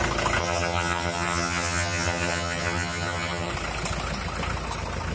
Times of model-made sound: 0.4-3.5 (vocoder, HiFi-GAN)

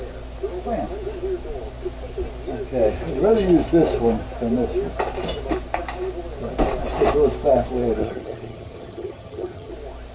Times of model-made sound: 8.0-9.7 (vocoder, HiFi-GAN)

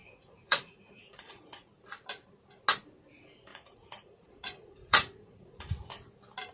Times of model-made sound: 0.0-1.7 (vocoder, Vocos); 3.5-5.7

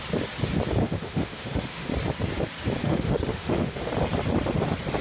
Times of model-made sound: 0.8-1.9 (autoencoder, DAC-VAE); 2.8-3.9

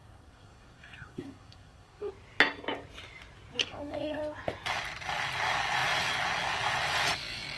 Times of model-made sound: 0.0-2.1 (codec, SNAC); 3.6-4.2